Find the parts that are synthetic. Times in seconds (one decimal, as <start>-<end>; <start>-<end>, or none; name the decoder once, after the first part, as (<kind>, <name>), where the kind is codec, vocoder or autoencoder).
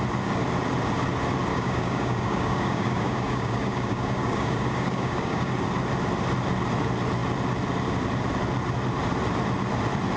1.5-5.5 (codec, DAC)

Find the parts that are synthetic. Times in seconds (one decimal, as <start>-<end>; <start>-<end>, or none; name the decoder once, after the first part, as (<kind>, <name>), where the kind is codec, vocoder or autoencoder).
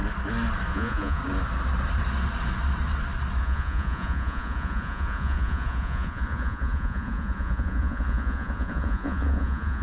0.7-1.2 (vocoder, Vocos); 3.4-9.8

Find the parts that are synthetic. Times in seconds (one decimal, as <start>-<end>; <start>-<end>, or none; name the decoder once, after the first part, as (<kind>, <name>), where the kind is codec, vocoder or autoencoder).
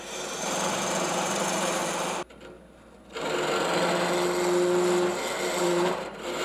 0.0-1.8 (vocoder, BigVGAN v2); 5.6-6.4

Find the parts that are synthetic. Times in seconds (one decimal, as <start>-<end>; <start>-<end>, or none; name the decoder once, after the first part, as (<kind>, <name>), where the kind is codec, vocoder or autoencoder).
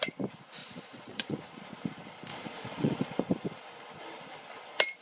0.6-1.4 (vocoder, Vocos); 2.3-3.2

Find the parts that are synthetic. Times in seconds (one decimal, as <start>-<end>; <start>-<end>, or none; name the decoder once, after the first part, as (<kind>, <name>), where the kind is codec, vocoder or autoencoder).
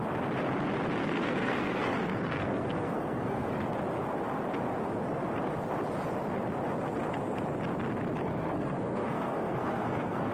1.0-3.5 (codec, SNAC); 8.2-10.3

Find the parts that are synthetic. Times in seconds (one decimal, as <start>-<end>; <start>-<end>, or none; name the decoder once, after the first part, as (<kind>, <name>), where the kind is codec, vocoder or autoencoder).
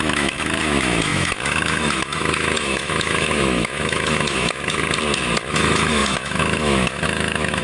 0.0-4.8 (autoencoder, DAC-VAE); 5.5-7.6